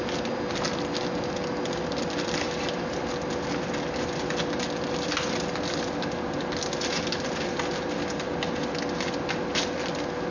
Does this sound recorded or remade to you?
recorded